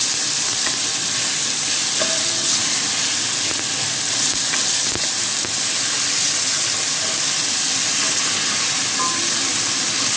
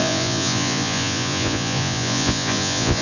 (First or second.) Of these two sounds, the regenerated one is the second